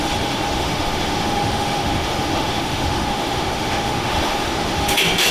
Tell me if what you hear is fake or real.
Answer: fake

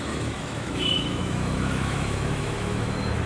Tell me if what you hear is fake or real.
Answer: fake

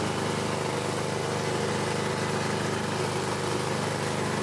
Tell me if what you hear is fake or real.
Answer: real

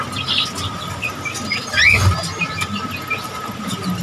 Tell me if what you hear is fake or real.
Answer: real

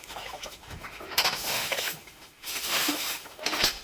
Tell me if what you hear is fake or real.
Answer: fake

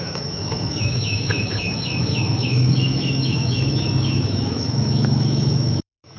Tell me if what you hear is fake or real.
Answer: fake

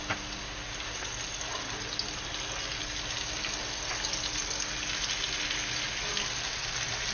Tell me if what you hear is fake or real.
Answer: real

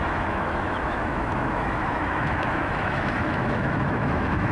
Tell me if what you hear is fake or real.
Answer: fake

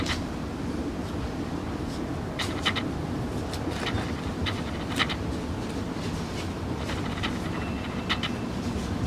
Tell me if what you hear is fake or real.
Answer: real